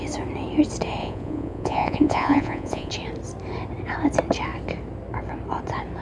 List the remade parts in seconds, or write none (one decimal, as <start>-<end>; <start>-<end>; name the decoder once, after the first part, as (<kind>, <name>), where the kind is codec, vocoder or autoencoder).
1.0-2.9 (vocoder, Vocos)